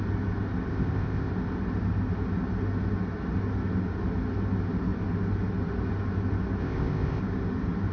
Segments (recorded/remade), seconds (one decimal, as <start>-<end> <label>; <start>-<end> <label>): 0.0-0.7 recorded; 0.7-1.3 remade; 1.3-6.6 recorded; 6.6-7.2 remade; 7.2-7.9 recorded